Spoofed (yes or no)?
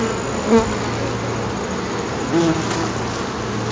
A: no